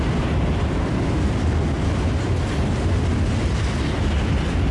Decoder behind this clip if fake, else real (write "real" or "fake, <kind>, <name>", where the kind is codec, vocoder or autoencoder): real